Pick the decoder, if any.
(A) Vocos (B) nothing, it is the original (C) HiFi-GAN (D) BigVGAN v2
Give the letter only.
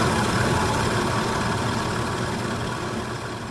B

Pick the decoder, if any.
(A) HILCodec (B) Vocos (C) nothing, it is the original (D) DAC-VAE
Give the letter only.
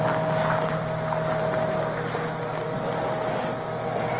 C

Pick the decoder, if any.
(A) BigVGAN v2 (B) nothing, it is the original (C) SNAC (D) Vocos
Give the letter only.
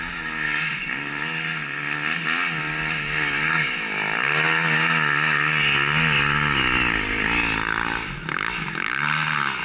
B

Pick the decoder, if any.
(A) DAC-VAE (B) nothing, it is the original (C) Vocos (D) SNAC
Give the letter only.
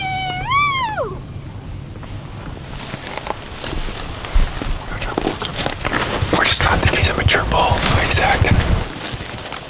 B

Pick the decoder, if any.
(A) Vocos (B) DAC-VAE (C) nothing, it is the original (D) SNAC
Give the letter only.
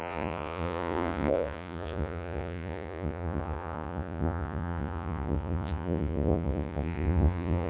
A